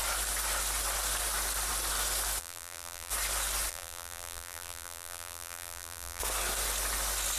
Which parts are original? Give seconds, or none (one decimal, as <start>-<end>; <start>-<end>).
0.0-2.4; 3.1-3.7; 6.2-7.4